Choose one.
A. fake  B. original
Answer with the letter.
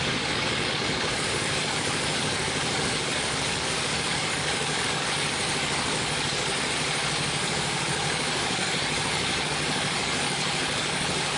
A